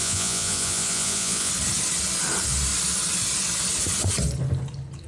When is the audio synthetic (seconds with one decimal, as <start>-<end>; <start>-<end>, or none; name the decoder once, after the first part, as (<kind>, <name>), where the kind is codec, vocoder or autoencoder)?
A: 0.0-1.5 (vocoder, Vocos)